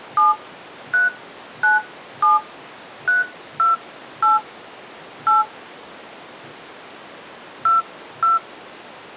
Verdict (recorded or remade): recorded